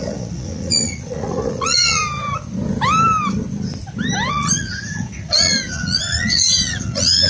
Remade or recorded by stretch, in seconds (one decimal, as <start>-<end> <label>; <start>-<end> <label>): 0.0-2.0 remade; 2.0-4.3 recorded; 4.3-7.3 remade